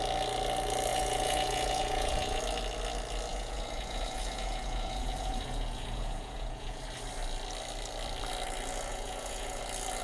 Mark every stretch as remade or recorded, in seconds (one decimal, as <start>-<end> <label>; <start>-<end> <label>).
0.0-0.9 recorded; 0.9-2.4 remade; 2.4-3.3 recorded; 3.3-6.8 remade; 6.8-8.9 recorded; 8.9-9.6 remade; 9.6-10.0 recorded